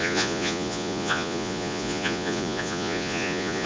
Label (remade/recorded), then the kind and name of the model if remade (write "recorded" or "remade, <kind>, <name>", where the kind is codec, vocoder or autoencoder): remade, vocoder, Vocos